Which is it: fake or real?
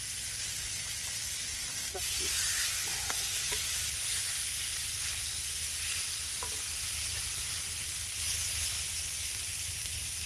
real